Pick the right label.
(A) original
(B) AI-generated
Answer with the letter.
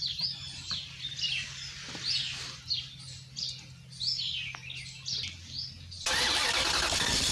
A